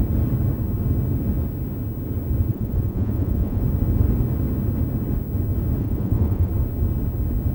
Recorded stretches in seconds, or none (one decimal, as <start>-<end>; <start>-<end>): 0.0-2.5; 3.6-5.8; 6.5-7.5